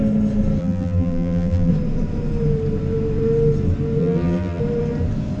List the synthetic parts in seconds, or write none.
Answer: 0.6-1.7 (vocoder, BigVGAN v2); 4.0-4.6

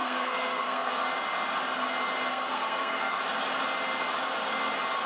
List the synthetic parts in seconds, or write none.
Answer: 0.0-0.9 (codec, SNAC); 2.3-3.2

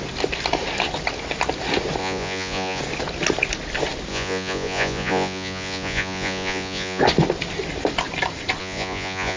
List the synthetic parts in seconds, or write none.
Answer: 2.0-2.8 (vocoder, Vocos); 4.1-7.0; 8.6-9.4

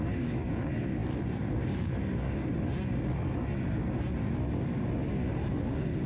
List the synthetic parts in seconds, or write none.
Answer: 0.0-1.0 (codec, DAC); 1.6-2.5; 5.6-6.1

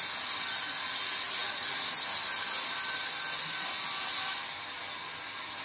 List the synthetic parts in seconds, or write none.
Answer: none

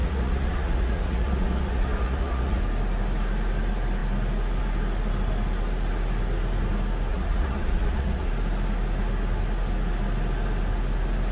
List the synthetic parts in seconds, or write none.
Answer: 0.0-2.6 (vocoder, Vocos); 7.1-8.3

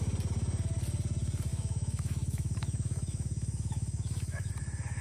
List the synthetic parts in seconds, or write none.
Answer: 1.5-4.5 (autoencoder, DAC-VAE)